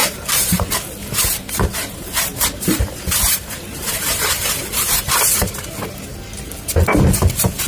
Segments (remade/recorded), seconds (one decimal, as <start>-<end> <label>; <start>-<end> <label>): 0.0-0.7 remade; 0.7-1.4 recorded; 1.4-5.1 remade; 5.1-7.7 recorded